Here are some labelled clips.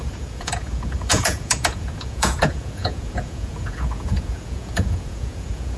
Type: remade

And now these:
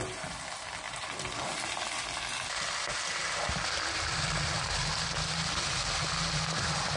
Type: recorded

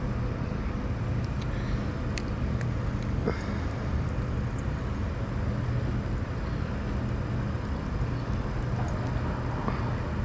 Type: recorded